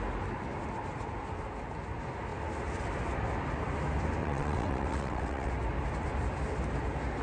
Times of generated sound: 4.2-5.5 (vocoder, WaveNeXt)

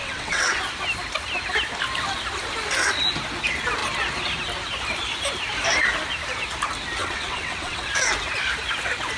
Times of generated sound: 0.0-0.6 (vocoder, WaveNeXt); 7.0-7.9

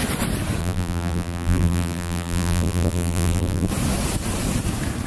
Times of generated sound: 0.6-3.7 (vocoder, BigVGAN v2)